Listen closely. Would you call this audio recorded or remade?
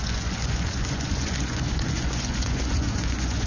remade